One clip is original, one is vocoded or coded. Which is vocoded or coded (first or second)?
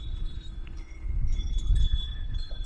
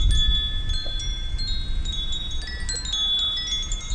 first